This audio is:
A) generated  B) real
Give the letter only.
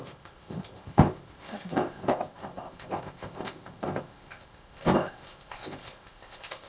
A